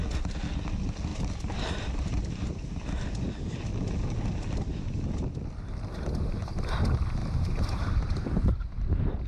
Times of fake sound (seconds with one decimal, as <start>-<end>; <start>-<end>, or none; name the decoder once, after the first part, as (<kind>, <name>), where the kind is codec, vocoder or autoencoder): 1.1-2.9 (vocoder, BigVGAN v2); 7.2-9.3